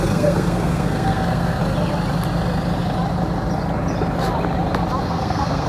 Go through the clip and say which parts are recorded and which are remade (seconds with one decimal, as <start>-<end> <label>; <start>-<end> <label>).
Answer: 0.0-1.6 remade; 1.6-5.0 recorded; 5.0-5.7 remade